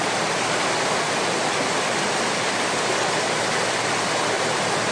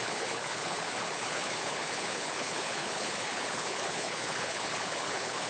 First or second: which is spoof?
second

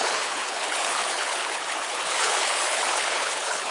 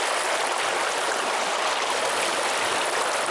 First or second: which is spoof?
first